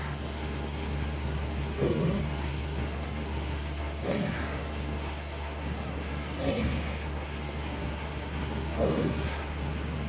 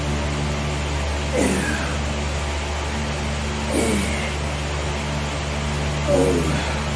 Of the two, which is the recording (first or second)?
second